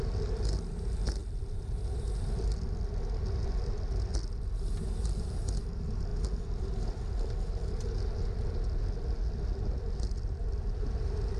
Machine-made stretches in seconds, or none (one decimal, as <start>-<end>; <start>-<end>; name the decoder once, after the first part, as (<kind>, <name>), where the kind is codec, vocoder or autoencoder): none